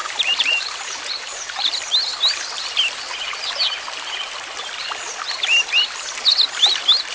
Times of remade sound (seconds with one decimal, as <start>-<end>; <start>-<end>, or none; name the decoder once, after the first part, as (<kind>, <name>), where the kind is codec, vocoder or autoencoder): 0.0-1.7 (vocoder, BigVGAN v2)

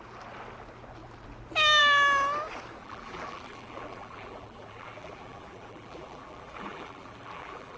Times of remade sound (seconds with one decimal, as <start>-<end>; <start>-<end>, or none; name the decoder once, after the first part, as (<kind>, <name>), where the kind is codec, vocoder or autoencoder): 2.8-7.8 (vocoder, BigVGAN v2)